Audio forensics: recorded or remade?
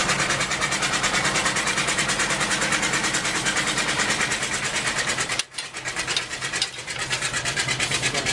remade